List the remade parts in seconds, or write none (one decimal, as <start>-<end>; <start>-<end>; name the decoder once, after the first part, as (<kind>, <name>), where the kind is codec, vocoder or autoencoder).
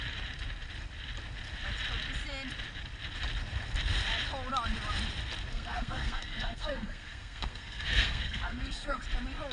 5.5-9.0 (codec, SNAC)